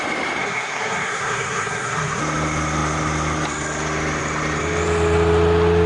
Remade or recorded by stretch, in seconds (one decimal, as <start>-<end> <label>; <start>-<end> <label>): 0.0-0.4 recorded; 0.4-2.2 remade; 2.2-5.9 recorded